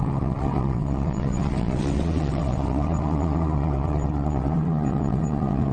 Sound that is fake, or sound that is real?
fake